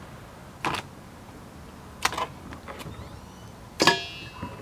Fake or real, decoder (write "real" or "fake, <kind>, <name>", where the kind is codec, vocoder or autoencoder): real